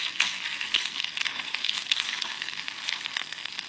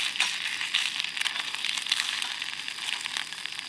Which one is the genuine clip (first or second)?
second